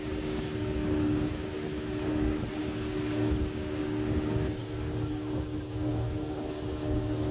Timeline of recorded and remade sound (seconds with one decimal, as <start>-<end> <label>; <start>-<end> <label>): 0.0-2.1 remade; 2.1-2.6 recorded; 2.6-7.3 remade

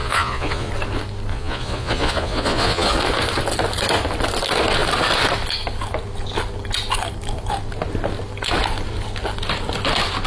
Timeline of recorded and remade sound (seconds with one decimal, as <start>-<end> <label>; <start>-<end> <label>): 0.0-0.7 remade; 0.7-1.3 recorded; 1.3-3.0 remade; 3.0-10.3 recorded

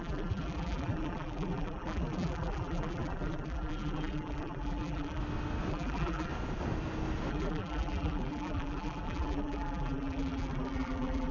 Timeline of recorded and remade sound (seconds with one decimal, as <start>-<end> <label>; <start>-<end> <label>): 0.0-5.2 remade; 5.2-5.7 recorded; 5.7-6.3 remade; 6.3-7.3 recorded; 7.3-11.3 remade

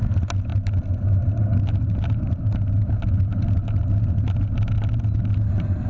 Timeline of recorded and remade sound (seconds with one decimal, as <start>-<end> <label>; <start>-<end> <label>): 0.0-5.9 recorded